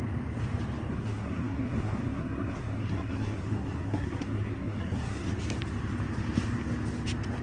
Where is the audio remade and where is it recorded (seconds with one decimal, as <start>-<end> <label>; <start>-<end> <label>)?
0.0-0.9 recorded; 0.9-5.3 remade; 5.3-7.4 recorded